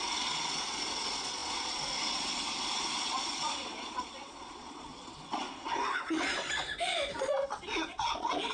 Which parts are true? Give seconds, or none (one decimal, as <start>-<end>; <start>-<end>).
6.6-7.1